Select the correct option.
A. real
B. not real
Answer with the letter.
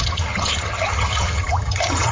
B